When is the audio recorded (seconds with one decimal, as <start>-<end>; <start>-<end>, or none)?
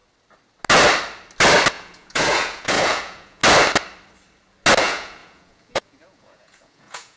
0.0-1.7; 3.4-4.8